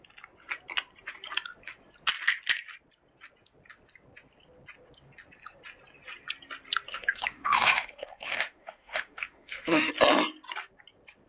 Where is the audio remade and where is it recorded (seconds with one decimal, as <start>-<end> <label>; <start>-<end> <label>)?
0.0-6.9 recorded; 6.9-9.9 remade; 9.9-11.3 recorded